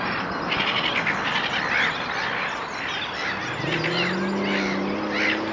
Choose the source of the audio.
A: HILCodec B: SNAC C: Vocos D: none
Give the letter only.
D